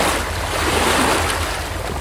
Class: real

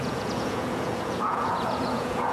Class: fake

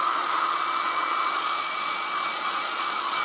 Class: fake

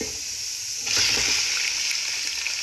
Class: real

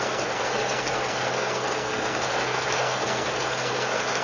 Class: fake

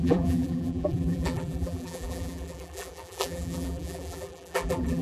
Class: fake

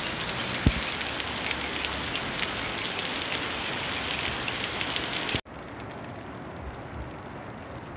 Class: real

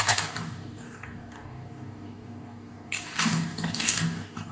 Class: fake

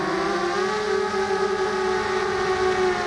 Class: real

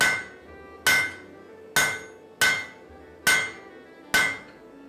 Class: real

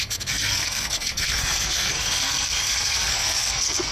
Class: fake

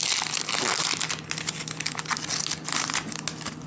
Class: real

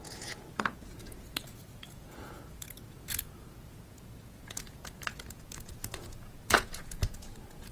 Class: fake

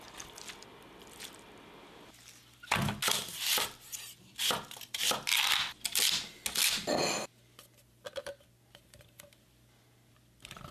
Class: real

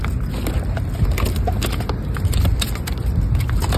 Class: real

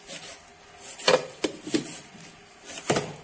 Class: real